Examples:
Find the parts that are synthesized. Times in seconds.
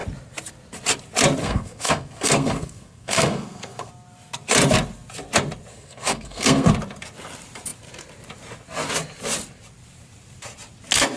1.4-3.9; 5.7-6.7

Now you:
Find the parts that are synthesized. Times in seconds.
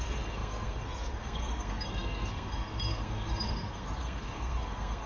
0.0-5.1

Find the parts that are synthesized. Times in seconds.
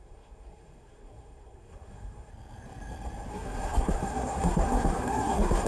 0.0-2.3; 3.3-5.7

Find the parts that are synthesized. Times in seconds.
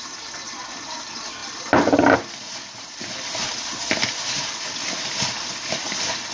none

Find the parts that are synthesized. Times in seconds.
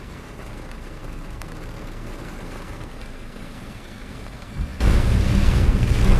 0.0-6.2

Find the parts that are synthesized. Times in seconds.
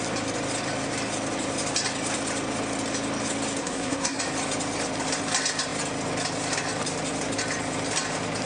3.6-4.2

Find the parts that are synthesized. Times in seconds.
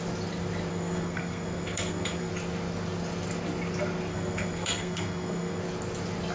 0.7-2.3; 4.1-5.6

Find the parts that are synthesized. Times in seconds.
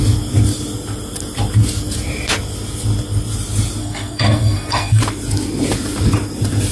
3.8-5.0